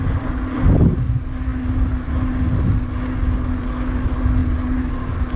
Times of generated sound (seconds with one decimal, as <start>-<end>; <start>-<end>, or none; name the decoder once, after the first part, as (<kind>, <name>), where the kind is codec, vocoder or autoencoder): none